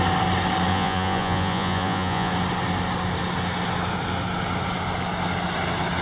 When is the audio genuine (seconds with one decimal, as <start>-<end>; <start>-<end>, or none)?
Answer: 0.0-0.7; 2.3-6.0